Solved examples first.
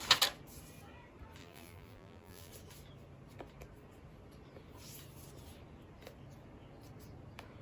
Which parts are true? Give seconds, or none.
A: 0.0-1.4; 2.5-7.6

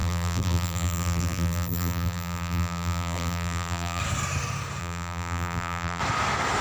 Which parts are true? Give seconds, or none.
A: 4.0-4.8; 6.0-6.6

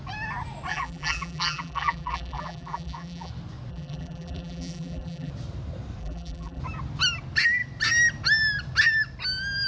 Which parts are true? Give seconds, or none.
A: 0.0-0.7; 3.3-3.7; 5.3-6.0; 6.6-9.7

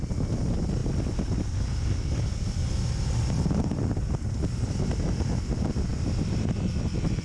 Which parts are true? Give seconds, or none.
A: 0.0-7.2